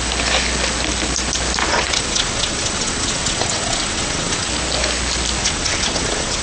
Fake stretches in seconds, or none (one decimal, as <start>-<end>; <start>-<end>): 1.6-4.5; 5.4-6.4